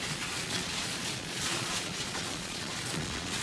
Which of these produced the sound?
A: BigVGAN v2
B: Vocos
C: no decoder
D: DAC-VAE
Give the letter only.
B